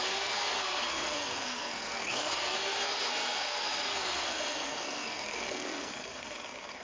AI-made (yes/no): yes